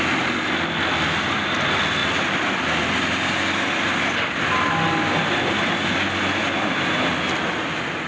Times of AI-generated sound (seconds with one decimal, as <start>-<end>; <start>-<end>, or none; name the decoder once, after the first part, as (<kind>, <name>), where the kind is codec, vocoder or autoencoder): none